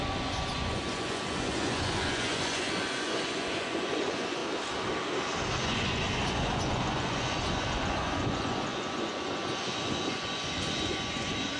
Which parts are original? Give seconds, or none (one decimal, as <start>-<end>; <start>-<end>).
4.4-5.6

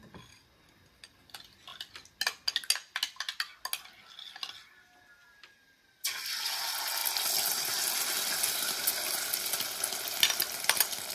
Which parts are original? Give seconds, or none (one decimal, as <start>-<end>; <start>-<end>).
0.0-11.1

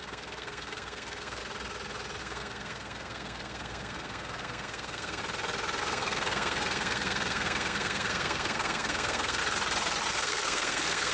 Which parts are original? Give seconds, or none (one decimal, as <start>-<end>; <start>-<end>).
1.4-2.2; 5.2-5.8; 9.4-10.1

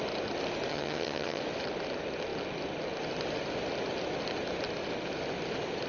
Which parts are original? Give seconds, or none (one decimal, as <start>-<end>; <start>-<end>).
0.0-0.7; 1.4-5.9

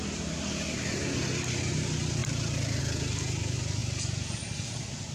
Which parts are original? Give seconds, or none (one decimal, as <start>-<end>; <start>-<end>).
0.0-5.1

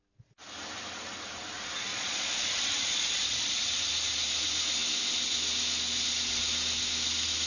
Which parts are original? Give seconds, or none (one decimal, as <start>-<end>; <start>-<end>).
0.0-1.9; 3.8-7.5

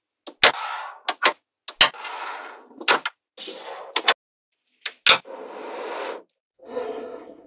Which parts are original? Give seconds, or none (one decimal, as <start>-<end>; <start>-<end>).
0.0-6.5